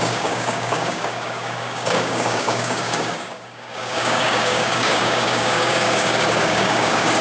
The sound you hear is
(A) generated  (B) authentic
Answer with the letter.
A